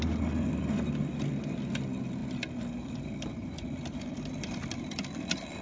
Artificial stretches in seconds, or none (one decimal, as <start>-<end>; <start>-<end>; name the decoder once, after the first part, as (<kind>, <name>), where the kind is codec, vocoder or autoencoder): none